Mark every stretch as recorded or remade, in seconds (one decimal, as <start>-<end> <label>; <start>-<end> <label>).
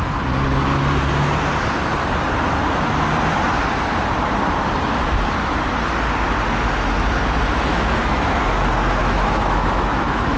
0.0-7.7 recorded; 7.7-8.4 remade; 8.4-9.0 recorded; 9.0-10.4 remade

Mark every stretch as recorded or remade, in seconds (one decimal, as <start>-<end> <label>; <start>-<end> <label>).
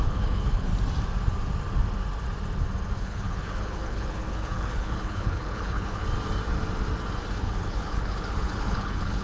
0.0-0.7 remade; 0.7-3.0 recorded; 3.0-6.0 remade; 6.0-7.4 recorded; 7.4-9.2 remade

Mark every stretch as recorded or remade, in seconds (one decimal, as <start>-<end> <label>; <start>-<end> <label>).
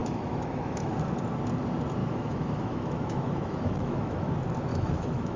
0.0-0.9 remade; 0.9-2.0 recorded; 2.0-4.3 remade; 4.3-4.7 recorded; 4.7-5.4 remade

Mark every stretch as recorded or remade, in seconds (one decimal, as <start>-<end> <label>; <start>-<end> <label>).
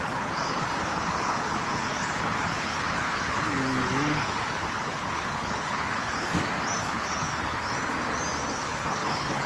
0.0-6.3 remade; 6.3-6.8 recorded; 6.8-7.7 remade; 7.7-8.5 recorded; 8.5-9.5 remade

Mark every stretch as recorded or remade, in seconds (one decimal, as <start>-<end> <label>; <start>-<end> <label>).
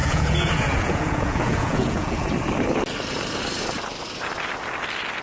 0.0-2.3 remade; 2.3-5.2 recorded